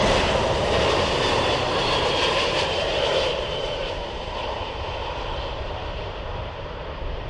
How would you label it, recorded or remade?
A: remade